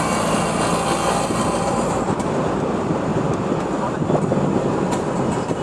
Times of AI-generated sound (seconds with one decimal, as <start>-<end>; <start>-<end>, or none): 0.0-3.1; 4.5-5.6